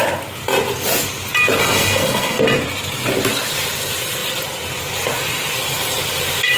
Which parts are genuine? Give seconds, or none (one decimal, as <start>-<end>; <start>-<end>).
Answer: 0.0-1.6; 2.4-6.6